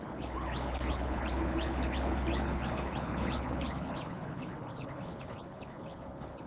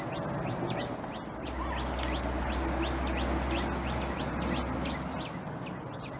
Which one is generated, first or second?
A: first